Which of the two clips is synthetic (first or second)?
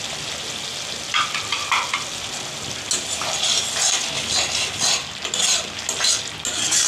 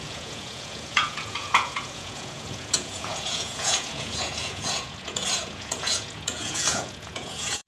second